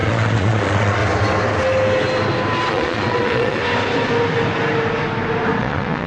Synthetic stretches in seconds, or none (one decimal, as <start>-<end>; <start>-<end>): 0.0-1.0; 2.7-3.6; 5.6-6.1